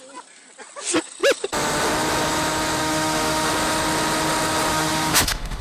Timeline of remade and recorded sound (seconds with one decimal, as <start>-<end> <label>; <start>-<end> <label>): 0.0-2.8 recorded; 2.8-3.5 remade; 3.5-4.7 recorded; 4.7-5.6 remade